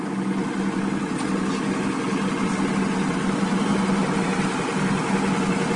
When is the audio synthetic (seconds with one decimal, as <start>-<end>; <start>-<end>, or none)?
none